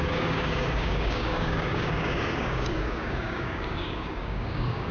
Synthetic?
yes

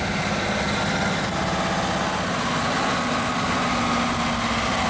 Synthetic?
no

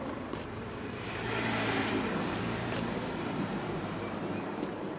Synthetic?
yes